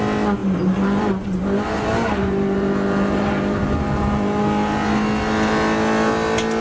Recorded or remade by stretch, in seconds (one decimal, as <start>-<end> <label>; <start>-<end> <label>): 0.0-0.4 recorded; 0.4-4.4 remade; 4.4-6.6 recorded

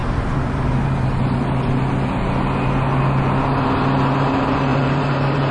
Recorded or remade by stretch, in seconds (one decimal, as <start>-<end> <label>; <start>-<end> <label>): 0.0-1.7 remade; 1.7-4.7 recorded; 4.7-5.5 remade